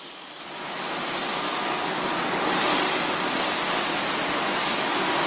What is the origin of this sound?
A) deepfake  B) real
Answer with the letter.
B